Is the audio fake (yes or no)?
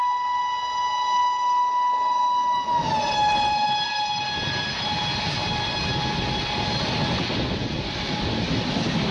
no